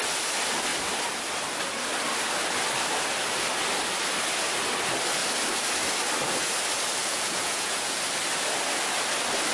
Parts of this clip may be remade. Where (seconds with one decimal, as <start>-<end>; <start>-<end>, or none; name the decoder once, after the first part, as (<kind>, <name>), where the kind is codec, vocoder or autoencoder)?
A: 7.0-8.0 (vocoder, Vocos)